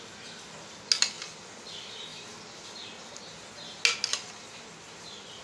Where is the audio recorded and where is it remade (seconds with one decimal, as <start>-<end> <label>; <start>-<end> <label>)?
0.0-5.4 recorded